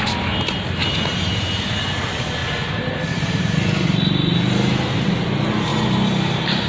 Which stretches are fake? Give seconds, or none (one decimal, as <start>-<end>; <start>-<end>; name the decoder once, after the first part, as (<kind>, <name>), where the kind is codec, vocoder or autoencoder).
none